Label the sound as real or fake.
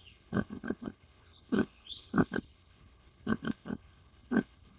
fake